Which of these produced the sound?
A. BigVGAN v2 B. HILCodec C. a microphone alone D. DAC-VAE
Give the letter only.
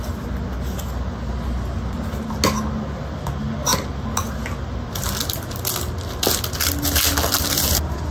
C